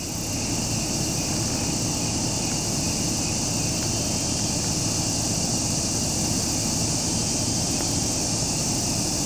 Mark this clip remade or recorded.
recorded